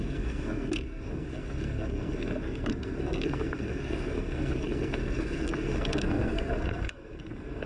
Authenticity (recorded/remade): remade